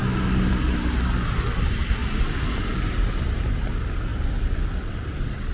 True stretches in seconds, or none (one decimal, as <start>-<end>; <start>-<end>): 0.0-5.5